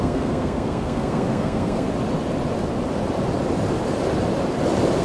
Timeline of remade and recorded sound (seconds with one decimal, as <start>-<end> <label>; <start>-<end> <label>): 0.0-1.9 remade; 1.9-5.0 recorded